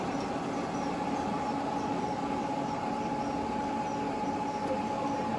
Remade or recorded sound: recorded